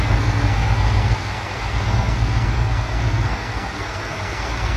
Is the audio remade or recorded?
remade